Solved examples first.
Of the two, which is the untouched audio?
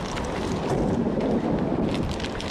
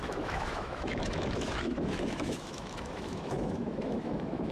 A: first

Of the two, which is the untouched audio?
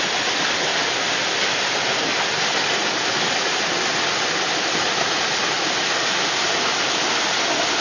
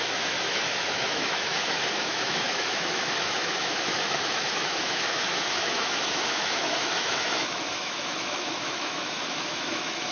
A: first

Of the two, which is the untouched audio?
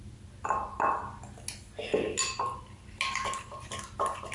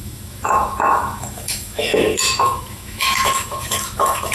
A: first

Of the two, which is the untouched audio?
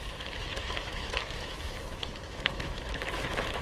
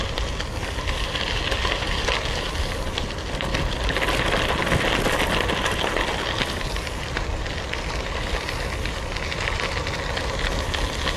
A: second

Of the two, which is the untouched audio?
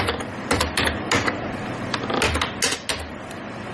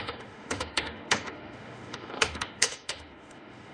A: first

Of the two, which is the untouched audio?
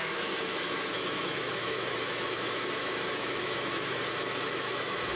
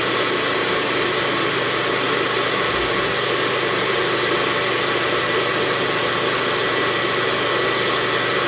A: second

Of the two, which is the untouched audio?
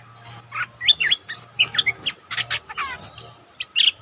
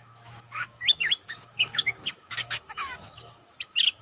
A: first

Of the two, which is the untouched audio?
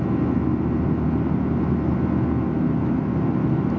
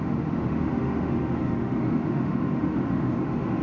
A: first